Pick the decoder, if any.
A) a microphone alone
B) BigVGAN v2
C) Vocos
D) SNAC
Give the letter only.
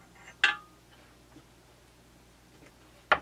A